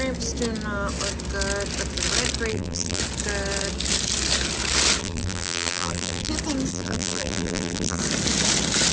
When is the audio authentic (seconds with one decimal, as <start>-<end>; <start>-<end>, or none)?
0.0-2.5; 3.0-5.0; 6.3-6.7; 8.0-8.9